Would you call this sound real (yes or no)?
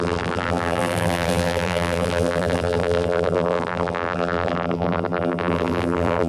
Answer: no